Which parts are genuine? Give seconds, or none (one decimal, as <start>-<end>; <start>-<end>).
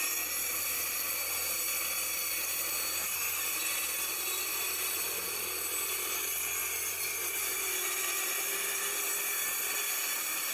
6.2-6.9; 9.1-9.7